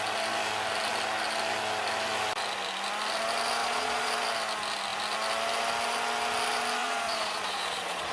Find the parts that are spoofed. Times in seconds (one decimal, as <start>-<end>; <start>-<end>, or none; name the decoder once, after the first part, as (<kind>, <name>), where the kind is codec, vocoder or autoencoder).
3.6-4.1 (vocoder, Vocos); 6.8-8.1

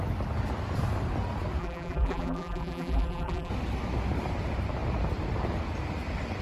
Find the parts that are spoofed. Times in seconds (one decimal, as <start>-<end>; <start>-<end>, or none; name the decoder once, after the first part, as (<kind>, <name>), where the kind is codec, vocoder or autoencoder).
1.6-3.5 (vocoder, BigVGAN v2)

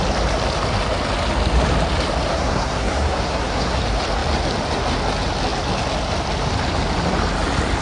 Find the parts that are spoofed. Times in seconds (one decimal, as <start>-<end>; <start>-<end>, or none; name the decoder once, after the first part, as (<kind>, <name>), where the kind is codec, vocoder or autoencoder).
2.3-3.8 (codec, SNAC)